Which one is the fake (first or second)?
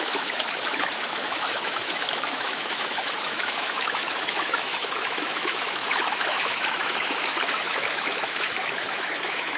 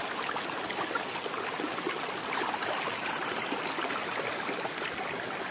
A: first